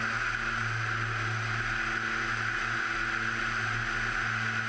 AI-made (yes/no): no